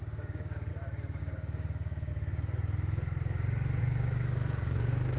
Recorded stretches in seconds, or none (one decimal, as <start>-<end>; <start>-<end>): 0.7-1.2; 2.1-3.8